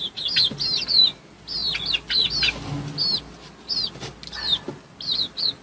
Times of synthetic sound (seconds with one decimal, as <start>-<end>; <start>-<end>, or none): none